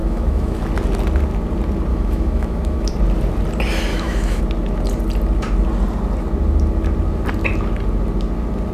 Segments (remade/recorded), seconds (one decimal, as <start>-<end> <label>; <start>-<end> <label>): 0.0-0.6 remade; 0.6-1.9 recorded; 1.9-2.9 remade; 2.9-3.9 recorded; 3.9-4.4 remade; 4.4-8.7 recorded